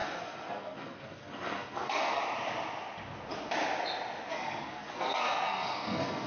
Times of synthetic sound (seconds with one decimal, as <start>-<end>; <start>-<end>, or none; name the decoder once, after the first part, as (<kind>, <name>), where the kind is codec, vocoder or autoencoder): 0.0-2.2 (codec, SNAC); 4.3-6.3